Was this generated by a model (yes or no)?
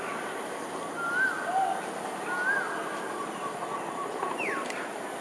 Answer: no